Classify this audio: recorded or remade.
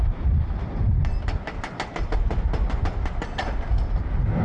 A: recorded